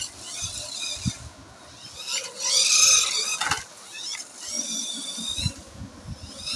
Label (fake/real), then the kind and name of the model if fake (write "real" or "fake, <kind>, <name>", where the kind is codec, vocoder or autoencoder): real